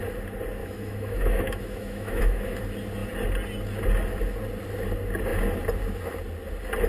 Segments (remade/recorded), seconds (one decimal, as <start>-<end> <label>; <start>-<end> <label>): 0.0-0.6 recorded; 0.6-2.6 remade; 2.6-6.9 recorded